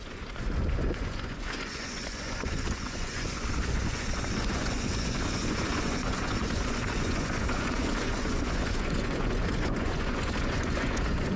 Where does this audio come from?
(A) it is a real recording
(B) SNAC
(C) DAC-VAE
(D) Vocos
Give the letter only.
D